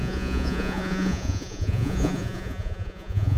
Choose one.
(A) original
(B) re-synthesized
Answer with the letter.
B